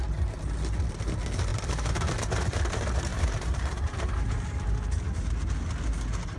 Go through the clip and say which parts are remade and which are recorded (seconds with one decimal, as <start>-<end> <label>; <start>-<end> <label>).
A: 0.0-1.5 recorded; 1.5-2.6 remade; 2.6-3.1 recorded; 3.1-4.3 remade; 4.3-6.4 recorded